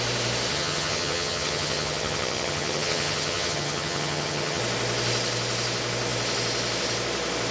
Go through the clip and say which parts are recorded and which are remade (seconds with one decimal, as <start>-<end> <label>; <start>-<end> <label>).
0.0-0.5 recorded; 0.5-4.6 remade; 4.6-7.5 recorded